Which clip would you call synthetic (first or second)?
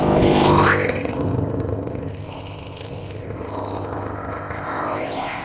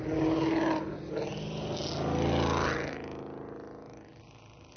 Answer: first